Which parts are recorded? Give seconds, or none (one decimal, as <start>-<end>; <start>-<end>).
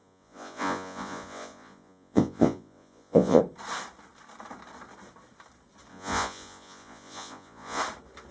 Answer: 3.4-5.9; 7.8-8.3